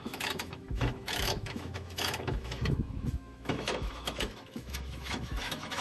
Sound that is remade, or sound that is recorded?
remade